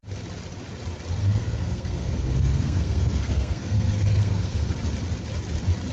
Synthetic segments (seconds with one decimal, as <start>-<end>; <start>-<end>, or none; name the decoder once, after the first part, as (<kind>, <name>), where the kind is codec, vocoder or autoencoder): 1.2-4.7 (codec, SNAC)